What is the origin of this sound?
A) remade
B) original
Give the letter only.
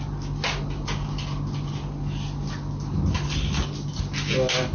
B